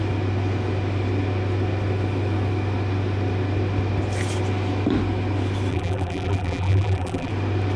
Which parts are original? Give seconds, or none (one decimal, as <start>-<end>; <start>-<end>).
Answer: 0.0-5.7; 7.3-7.8